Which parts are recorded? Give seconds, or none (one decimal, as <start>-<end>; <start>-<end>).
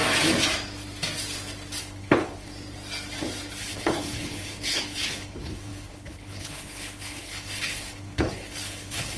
0.0-1.8; 2.5-3.6